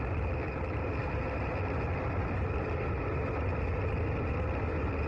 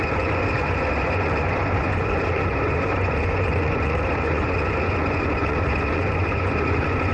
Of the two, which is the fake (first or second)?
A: second